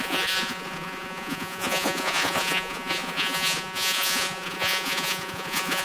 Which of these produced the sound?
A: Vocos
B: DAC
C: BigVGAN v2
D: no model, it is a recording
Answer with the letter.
A